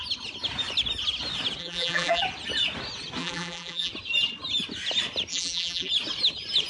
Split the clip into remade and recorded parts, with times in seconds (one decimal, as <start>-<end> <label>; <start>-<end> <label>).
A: 0.0-1.6 recorded; 1.6-2.2 remade; 2.2-3.2 recorded; 3.2-3.9 remade; 3.9-5.3 recorded; 5.3-5.9 remade; 5.9-6.7 recorded